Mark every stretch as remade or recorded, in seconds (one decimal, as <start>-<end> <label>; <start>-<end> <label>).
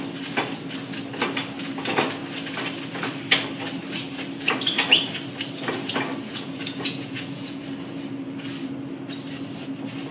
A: 0.0-6.3 recorded; 6.3-7.6 remade; 7.6-10.1 recorded